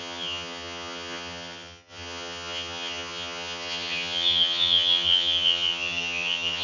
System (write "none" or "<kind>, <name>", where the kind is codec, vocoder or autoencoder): vocoder, HiFi-GAN